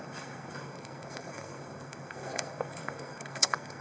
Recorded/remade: remade